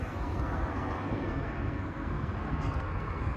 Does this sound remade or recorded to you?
remade